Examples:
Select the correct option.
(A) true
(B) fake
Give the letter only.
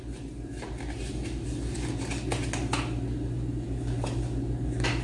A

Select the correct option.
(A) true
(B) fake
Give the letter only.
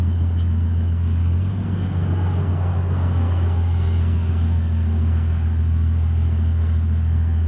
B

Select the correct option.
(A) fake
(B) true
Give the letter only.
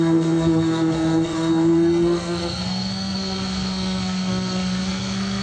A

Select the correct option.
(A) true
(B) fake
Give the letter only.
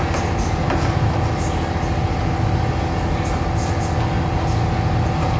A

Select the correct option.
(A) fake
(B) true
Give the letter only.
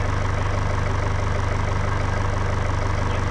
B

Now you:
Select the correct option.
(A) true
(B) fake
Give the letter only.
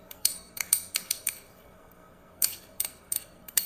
B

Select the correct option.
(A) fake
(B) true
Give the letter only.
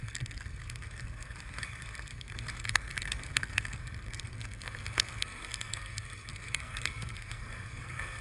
A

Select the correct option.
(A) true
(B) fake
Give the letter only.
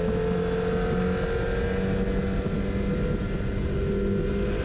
A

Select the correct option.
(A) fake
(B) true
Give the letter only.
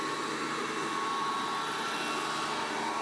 B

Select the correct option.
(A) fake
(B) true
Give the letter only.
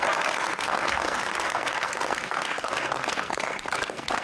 A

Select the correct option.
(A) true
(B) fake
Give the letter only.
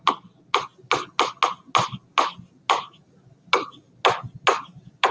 A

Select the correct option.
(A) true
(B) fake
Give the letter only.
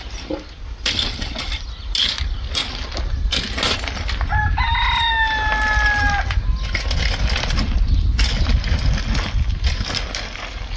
A